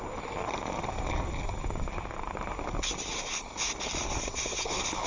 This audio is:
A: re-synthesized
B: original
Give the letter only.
B